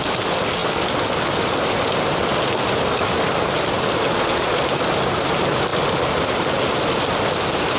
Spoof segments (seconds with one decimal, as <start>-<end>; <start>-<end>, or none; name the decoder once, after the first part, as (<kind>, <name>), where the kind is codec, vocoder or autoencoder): 4.1-4.6 (vocoder, Vocos)